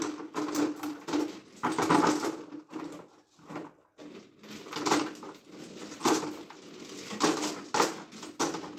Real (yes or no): yes